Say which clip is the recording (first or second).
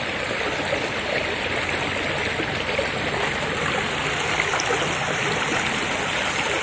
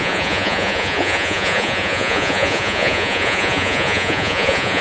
first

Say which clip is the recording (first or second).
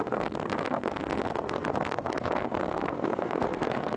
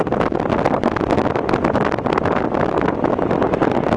second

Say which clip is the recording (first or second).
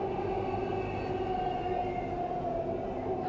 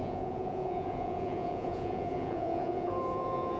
first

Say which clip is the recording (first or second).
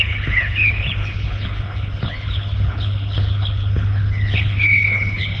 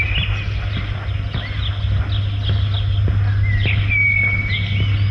second